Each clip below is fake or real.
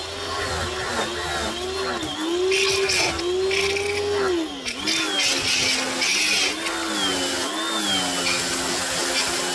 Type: real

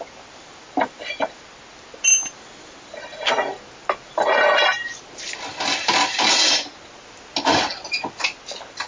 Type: real